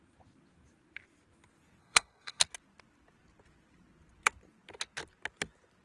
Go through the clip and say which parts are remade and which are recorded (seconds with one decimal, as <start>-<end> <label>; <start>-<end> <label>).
0.0-1.8 recorded; 1.8-2.4 remade; 2.4-5.8 recorded